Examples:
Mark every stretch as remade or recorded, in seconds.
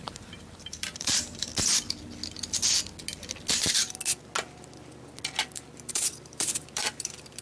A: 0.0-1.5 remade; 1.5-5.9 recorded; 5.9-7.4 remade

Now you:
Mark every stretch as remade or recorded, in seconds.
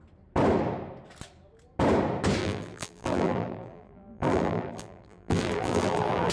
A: 0.0-2.4 recorded; 2.4-6.3 remade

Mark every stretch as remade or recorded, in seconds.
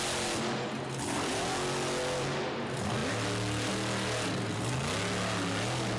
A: 0.0-6.0 recorded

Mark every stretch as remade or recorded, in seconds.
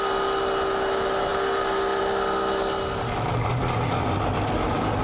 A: 0.0-5.0 recorded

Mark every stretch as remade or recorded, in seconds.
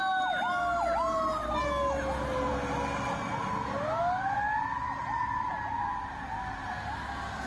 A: 0.0-7.5 recorded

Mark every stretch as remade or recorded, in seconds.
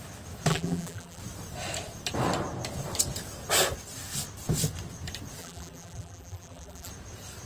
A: 0.0-0.5 recorded; 0.5-1.2 remade; 1.2-5.4 recorded; 5.4-6.9 remade; 6.9-7.5 recorded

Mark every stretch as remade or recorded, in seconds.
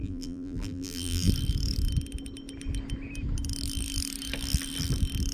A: 0.0-1.3 remade; 1.3-5.3 recorded